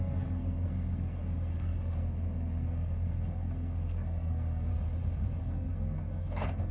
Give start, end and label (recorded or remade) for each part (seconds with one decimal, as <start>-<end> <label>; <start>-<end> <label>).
0.0-4.7 remade; 4.7-5.4 recorded; 5.4-6.7 remade